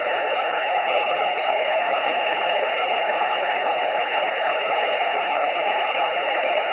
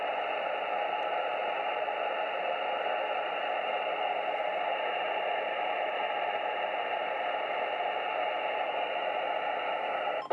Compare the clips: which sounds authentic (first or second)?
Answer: second